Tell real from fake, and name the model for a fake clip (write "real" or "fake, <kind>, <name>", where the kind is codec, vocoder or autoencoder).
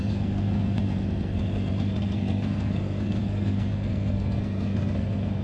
fake, codec, SNAC